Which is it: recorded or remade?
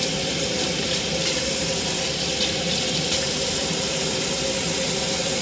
remade